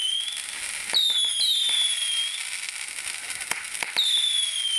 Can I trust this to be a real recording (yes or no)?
yes